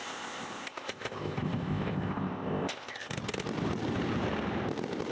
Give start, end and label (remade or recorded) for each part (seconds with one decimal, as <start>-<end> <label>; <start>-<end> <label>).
0.0-3.1 remade; 3.1-5.1 recorded

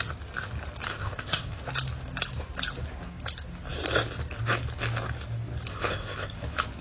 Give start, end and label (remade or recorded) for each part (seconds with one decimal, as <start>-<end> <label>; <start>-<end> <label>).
0.0-0.9 recorded; 0.9-1.6 remade; 1.6-5.7 recorded; 5.7-6.3 remade; 6.3-6.8 recorded

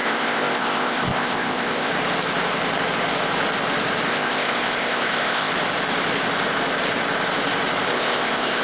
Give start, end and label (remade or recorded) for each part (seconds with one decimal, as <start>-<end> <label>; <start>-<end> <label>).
0.0-1.9 remade; 1.9-4.1 recorded; 4.1-5.5 remade; 5.5-7.9 recorded; 7.9-8.6 remade

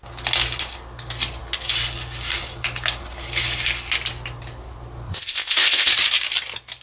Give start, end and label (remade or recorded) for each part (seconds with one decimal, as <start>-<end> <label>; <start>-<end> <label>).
0.0-5.1 recorded; 5.1-5.9 remade; 5.9-6.8 recorded

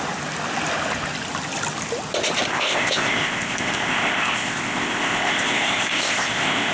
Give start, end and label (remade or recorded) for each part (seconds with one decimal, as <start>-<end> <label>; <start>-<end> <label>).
0.0-2.5 recorded; 2.5-6.7 remade

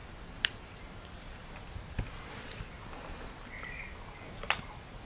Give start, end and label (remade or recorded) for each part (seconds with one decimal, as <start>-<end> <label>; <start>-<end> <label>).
0.0-5.1 recorded

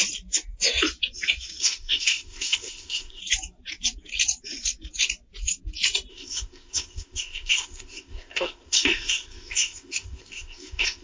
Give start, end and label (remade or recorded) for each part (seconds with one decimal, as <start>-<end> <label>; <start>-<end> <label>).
0.0-1.6 recorded; 1.6-3.2 remade; 3.2-6.1 recorded; 6.1-11.0 remade

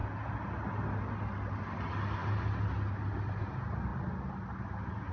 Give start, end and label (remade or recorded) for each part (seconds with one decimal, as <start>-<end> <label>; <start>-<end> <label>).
0.0-5.1 recorded